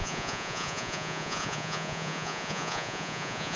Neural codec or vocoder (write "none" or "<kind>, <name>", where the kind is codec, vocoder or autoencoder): vocoder, Vocos